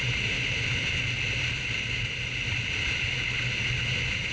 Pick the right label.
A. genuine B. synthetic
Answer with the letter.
A